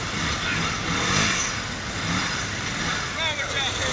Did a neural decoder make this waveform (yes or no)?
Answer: no